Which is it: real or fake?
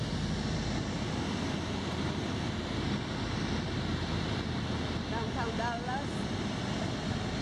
real